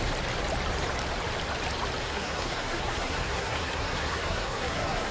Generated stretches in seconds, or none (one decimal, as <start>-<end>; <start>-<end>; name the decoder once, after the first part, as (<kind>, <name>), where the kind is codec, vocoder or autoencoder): 2.0-5.1 (codec, SNAC)